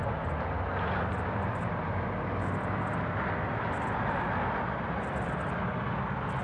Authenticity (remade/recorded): recorded